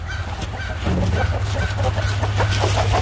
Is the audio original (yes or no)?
yes